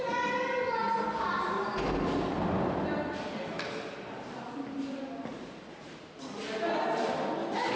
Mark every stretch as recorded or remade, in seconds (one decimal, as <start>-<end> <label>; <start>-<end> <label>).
0.0-5.3 recorded; 5.3-5.9 remade; 5.9-7.8 recorded